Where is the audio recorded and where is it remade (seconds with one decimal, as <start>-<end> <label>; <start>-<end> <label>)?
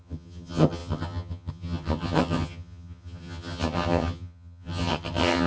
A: 0.0-5.5 remade